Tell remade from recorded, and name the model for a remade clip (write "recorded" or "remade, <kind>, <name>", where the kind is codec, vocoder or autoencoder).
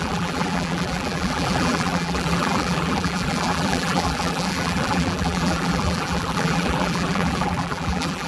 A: remade, vocoder, BigVGAN v2